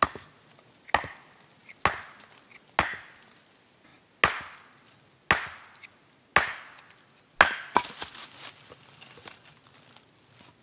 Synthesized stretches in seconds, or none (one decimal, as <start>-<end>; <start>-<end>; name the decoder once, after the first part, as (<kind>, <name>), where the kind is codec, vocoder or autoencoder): none